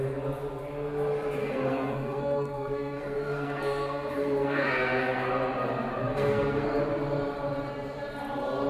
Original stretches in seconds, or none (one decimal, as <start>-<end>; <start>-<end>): 0.0-1.4; 5.3-6.0; 6.8-8.7